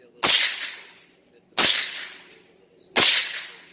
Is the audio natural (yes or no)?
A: yes